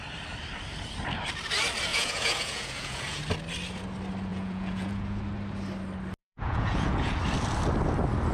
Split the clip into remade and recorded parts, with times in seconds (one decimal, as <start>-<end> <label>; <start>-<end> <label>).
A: 0.0-1.9 recorded; 1.9-3.2 remade; 3.2-4.3 recorded; 4.3-5.2 remade; 5.2-6.2 recorded; 6.2-7.2 remade; 7.2-8.3 recorded